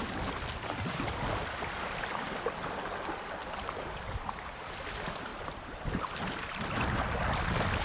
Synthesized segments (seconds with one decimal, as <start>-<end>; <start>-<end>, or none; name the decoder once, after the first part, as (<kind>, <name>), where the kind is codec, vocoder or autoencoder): 3.4-4.7 (vocoder, BigVGAN v2); 5.3-6.2